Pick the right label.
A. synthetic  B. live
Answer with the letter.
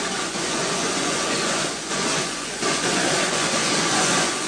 A